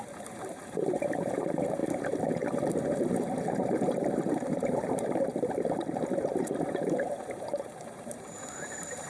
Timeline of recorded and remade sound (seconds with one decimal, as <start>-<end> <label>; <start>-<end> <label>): 0.0-5.3 remade; 5.3-6.2 recorded; 6.2-9.1 remade